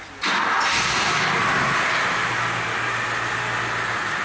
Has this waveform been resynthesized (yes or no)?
no